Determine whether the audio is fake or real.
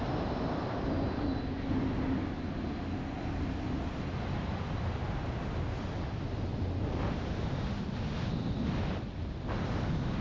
real